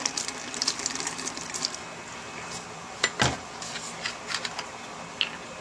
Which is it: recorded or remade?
recorded